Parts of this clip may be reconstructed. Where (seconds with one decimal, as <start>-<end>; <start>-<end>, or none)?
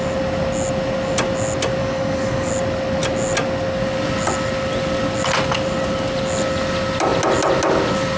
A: 1.8-2.5